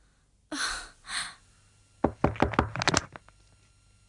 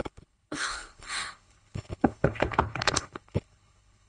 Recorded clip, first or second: first